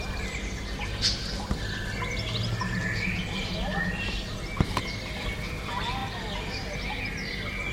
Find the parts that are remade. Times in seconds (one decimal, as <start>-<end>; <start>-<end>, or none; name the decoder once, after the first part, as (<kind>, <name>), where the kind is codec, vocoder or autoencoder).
none